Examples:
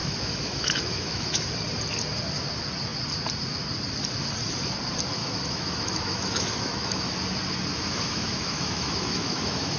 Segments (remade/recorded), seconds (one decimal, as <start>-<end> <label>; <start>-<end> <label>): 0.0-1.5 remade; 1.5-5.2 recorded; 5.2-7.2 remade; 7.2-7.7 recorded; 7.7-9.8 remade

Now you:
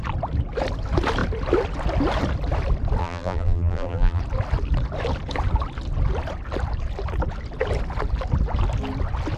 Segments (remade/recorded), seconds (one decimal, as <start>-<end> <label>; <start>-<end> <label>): 0.0-3.0 recorded; 3.0-4.2 remade; 4.2-9.4 recorded

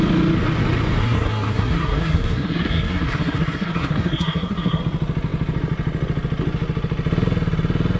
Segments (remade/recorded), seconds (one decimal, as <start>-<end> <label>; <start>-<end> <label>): 0.0-1.0 recorded; 1.0-4.8 remade; 4.8-8.0 recorded

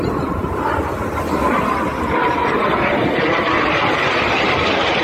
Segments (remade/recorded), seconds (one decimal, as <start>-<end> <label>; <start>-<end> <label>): 0.0-0.9 remade; 0.9-3.9 recorded; 3.9-5.0 remade